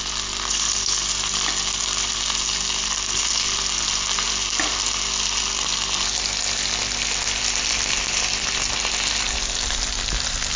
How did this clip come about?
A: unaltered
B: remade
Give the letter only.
A